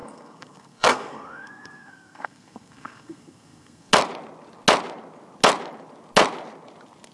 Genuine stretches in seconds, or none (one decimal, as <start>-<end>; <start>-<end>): 3.9-7.1